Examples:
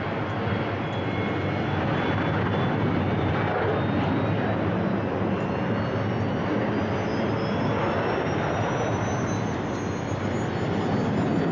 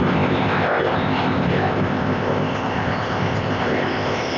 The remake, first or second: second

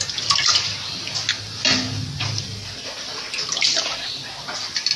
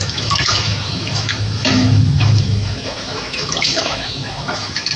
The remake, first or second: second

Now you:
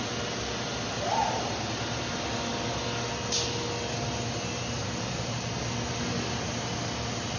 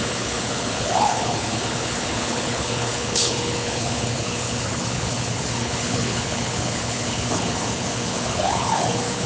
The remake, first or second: second